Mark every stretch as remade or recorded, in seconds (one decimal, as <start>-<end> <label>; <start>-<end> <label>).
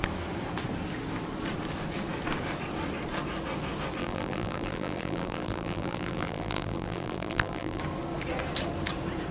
0.0-4.0 recorded; 4.0-7.8 remade; 7.8-9.3 recorded